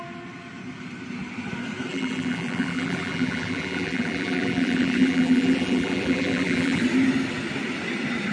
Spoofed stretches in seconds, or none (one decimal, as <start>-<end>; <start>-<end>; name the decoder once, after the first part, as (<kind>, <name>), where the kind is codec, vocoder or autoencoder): 1.9-6.8 (vocoder, BigVGAN v2)